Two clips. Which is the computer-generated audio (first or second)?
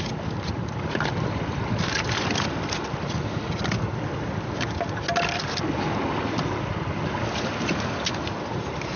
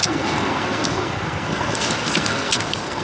second